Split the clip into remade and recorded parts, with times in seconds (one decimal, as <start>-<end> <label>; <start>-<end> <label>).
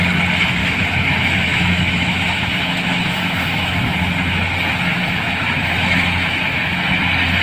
0.0-0.6 recorded; 0.6-4.0 remade; 4.0-4.9 recorded; 4.9-7.0 remade; 7.0-7.4 recorded